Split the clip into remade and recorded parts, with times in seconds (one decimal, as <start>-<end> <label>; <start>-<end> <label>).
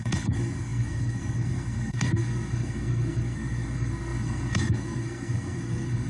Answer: 0.0-6.1 remade